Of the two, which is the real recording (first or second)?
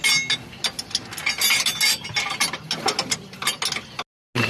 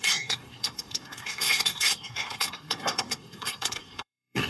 first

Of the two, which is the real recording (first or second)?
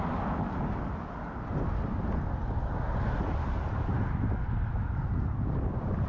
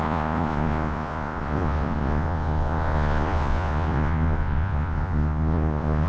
first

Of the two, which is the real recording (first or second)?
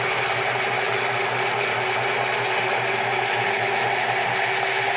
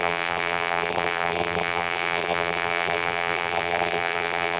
first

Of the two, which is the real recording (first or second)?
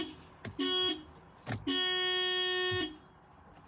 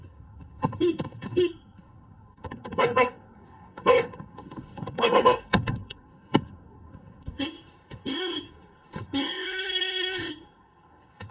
first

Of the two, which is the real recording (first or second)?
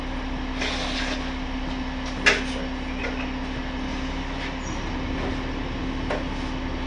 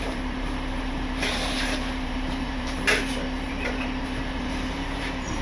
first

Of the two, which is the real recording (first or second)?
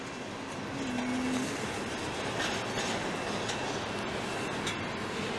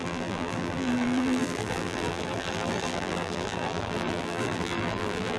first